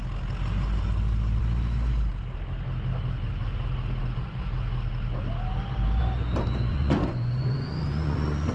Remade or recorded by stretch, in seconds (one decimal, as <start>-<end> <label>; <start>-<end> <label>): 0.0-6.7 recorded; 6.7-8.5 remade